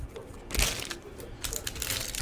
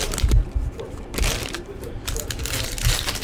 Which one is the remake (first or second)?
second